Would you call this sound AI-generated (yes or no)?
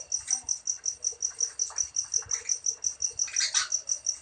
no